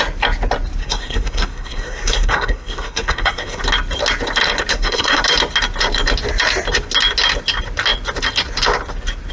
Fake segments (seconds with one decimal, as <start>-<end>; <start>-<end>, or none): 0.8-3.6; 4.7-5.2